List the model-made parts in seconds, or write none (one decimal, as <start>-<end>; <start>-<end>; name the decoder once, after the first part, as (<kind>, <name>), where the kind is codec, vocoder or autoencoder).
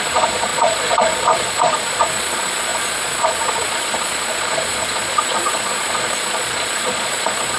0.0-7.6 (vocoder, Vocos)